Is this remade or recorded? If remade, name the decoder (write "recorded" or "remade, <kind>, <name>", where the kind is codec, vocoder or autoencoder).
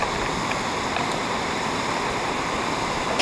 recorded